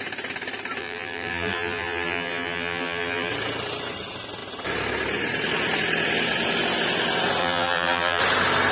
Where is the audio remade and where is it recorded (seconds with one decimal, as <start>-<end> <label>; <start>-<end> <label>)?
0.0-0.8 recorded; 0.8-3.3 remade; 3.3-7.4 recorded; 7.4-8.2 remade; 8.2-8.7 recorded